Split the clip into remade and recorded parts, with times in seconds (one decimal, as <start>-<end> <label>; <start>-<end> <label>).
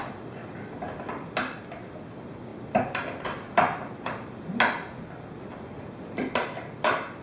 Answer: 0.0-7.2 recorded